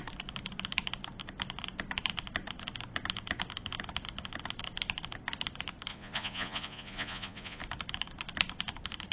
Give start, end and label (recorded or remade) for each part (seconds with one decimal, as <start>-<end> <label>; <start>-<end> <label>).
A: 0.0-5.9 recorded; 5.9-7.6 remade; 7.6-9.1 recorded